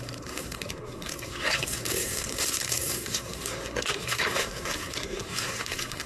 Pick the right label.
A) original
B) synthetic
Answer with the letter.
B